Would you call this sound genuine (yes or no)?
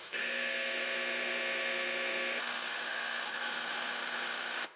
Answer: no